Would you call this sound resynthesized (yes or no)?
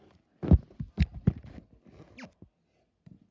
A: no